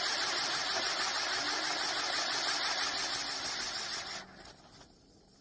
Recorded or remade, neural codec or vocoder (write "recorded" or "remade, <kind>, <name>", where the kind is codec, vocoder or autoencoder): recorded